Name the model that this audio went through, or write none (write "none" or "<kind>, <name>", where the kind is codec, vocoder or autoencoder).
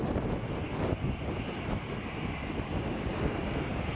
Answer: none